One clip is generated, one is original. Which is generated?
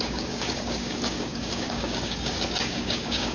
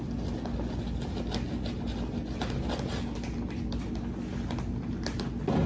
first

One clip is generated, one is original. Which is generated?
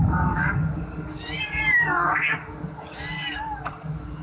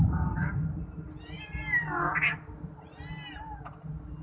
first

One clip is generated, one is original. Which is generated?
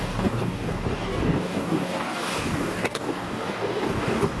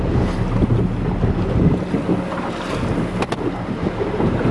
first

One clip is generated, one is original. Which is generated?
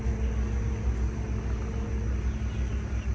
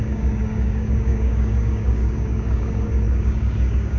second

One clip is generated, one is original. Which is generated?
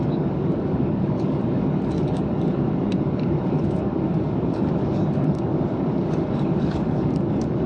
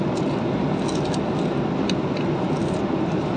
first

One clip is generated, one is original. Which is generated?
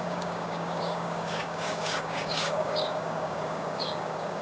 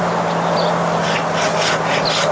first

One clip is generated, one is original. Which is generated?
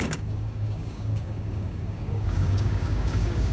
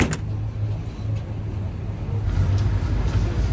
first